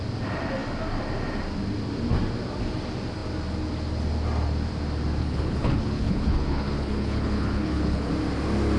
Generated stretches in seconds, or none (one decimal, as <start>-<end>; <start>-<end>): 5.2-8.1